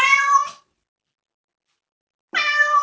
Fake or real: real